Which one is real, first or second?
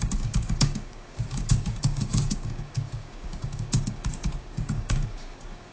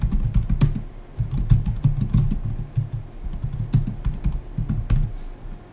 second